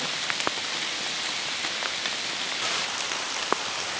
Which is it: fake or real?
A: real